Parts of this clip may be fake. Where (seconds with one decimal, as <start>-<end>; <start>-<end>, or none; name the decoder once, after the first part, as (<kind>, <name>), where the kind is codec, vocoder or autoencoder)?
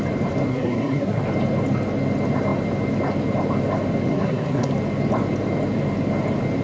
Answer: 0.5-1.2 (codec, SNAC); 4.1-4.7